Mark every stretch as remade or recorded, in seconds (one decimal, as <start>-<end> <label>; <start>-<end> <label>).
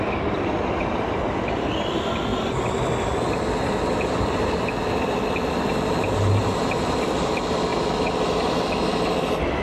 0.0-7.7 recorded; 7.7-8.7 remade; 8.7-9.6 recorded